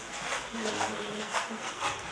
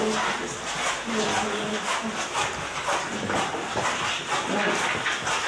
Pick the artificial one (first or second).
first